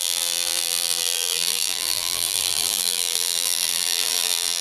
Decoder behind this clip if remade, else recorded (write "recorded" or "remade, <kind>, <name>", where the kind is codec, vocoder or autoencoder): remade, vocoder, BigVGAN v2